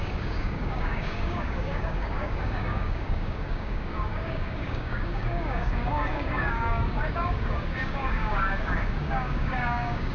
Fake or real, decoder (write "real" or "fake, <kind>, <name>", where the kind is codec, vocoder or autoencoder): fake, codec, DAC